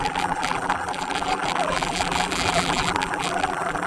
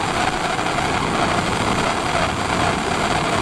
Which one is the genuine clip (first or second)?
second